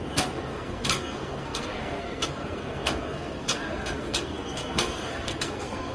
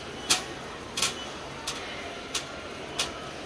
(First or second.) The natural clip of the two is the second